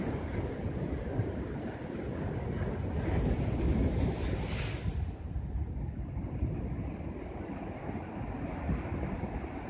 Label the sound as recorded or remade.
recorded